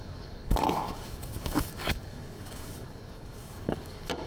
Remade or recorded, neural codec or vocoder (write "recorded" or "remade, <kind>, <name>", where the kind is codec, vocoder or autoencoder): remade, codec, DAC